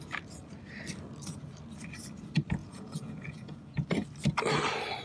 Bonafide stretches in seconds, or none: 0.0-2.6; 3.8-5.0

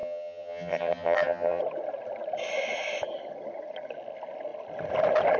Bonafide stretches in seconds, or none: 1.6-5.4

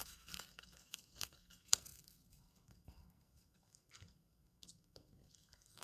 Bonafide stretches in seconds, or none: none

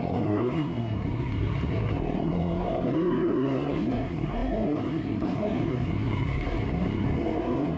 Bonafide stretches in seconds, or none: none

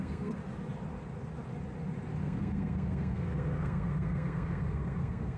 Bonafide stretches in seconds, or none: 0.4-2.2

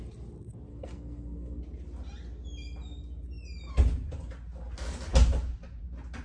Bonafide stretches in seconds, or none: 0.0-0.7; 1.6-6.2